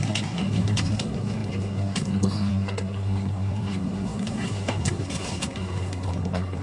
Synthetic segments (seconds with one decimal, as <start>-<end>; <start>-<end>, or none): 0.0-6.6